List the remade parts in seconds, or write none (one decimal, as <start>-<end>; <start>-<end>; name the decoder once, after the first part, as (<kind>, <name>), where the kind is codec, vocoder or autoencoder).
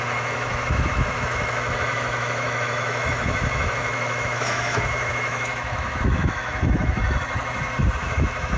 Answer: 0.0-7.0 (autoencoder, DAC-VAE); 8.0-8.6